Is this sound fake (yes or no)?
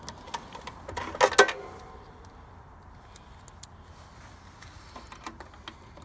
no